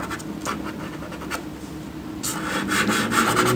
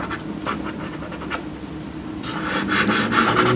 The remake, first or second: second